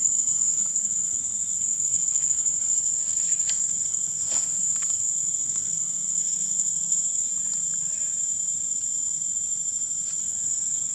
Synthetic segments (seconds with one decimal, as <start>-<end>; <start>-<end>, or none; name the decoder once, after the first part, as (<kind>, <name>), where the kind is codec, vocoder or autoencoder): 0.0-7.3 (codec, SNAC); 10.2-10.9